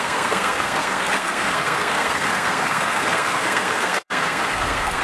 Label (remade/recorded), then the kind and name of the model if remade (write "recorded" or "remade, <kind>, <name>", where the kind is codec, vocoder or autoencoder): remade, codec, SNAC